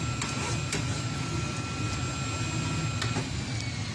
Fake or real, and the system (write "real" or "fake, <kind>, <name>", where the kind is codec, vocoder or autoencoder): real